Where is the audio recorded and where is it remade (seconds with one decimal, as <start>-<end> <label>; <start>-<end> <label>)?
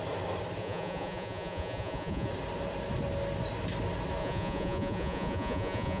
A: 0.0-0.6 recorded; 0.6-2.3 remade; 2.3-4.2 recorded; 4.2-6.0 remade